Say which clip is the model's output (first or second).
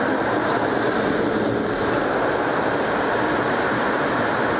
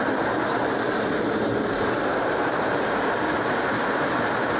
second